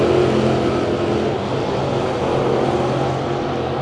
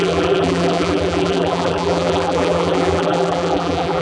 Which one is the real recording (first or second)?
first